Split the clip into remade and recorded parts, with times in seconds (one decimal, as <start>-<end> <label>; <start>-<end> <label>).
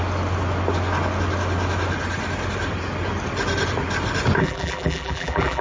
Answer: 0.0-4.4 recorded; 4.4-5.6 remade